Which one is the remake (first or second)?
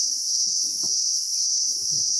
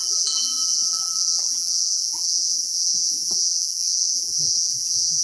second